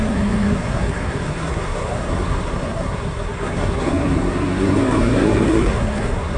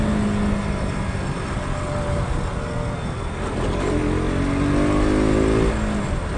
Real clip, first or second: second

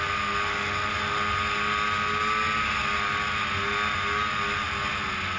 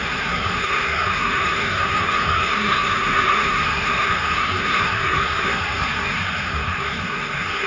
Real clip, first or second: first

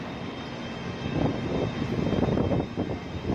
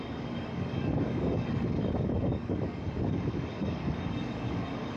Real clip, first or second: first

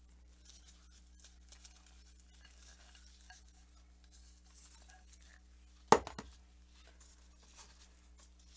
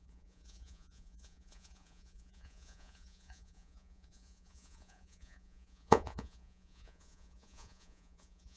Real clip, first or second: first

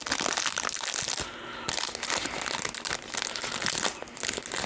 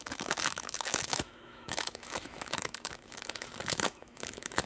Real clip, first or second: first